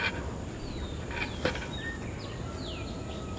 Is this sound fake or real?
real